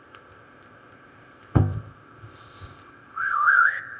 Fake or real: fake